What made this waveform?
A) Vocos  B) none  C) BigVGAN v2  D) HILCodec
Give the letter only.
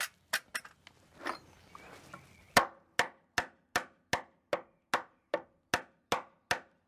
B